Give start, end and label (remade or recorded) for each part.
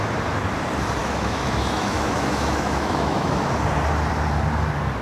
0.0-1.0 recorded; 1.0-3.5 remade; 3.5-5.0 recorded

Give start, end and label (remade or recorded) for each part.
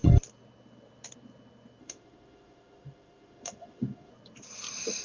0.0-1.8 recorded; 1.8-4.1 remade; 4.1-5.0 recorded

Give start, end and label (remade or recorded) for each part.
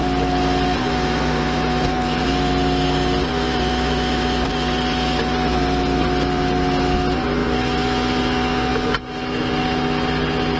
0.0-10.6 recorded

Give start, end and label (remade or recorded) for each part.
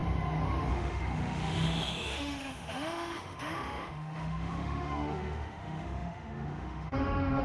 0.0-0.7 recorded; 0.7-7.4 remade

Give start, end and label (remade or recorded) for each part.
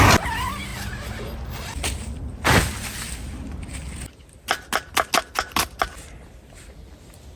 0.0-7.4 recorded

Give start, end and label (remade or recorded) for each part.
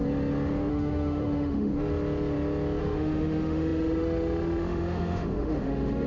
0.0-0.7 recorded; 0.7-1.7 remade; 1.7-2.8 recorded; 2.8-6.1 remade